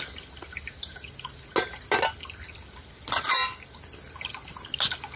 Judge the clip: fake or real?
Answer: real